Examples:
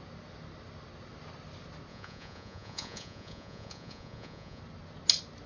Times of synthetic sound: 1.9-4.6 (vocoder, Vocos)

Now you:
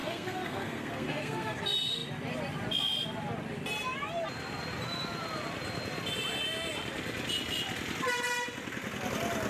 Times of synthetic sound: 0.0-1.6 (codec, SNAC)

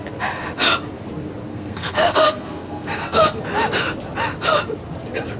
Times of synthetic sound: 1.5-3.4 (codec, SNAC)

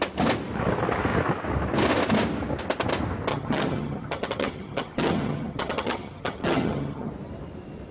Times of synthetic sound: 3.3-7.1 (vocoder, HiFi-GAN)

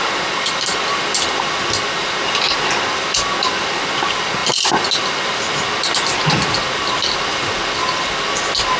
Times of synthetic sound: none

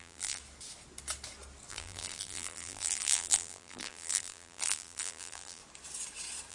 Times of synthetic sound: 0.0-0.4 (vocoder, BigVGAN v2); 1.7-5.6